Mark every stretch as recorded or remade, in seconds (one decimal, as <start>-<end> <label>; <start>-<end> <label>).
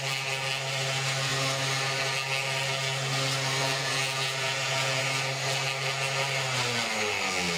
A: 0.0-3.6 recorded; 3.6-5.0 remade; 5.0-7.6 recorded